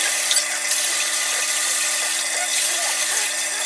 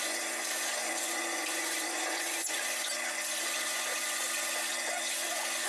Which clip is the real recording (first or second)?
first